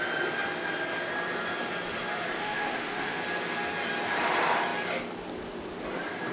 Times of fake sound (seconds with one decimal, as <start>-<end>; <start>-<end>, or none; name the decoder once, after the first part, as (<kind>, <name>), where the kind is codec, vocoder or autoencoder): 2.3-3.2 (autoencoder, DAC-VAE)